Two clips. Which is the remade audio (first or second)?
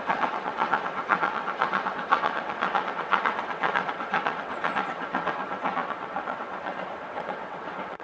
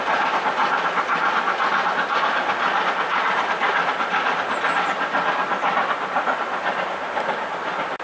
first